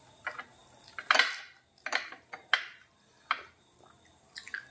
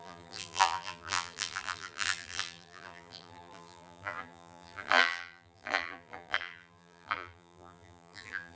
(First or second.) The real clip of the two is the first